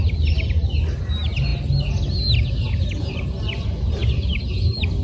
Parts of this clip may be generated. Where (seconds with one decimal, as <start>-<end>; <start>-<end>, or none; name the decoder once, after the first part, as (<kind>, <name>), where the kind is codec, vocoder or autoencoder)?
none